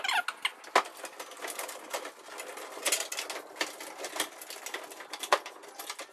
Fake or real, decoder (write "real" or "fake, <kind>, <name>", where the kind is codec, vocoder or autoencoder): real